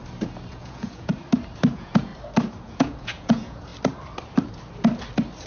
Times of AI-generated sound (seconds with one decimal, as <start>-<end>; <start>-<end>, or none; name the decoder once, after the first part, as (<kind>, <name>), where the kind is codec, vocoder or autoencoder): 0.5-1.1 (vocoder, Vocos); 1.7-2.1; 2.6-3.7